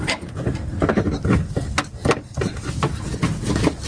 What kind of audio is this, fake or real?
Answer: fake